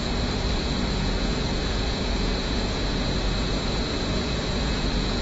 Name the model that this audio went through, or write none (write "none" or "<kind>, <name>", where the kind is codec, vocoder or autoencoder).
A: vocoder, Vocos